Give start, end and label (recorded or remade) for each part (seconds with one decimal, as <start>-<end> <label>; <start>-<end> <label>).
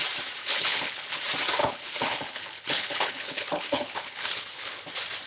0.0-0.4 recorded; 0.4-1.2 remade; 1.2-1.6 recorded; 1.6-4.8 remade; 4.8-5.3 recorded